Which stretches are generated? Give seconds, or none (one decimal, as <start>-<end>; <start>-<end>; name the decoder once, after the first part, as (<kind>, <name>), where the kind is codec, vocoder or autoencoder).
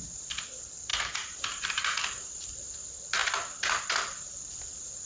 0.9-2.7 (vocoder, BigVGAN v2)